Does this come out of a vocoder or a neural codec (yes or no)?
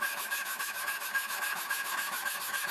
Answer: yes